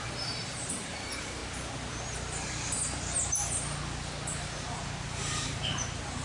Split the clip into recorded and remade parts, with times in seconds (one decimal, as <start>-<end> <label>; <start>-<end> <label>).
0.0-1.4 remade; 1.4-5.1 recorded; 5.1-5.6 remade; 5.6-6.2 recorded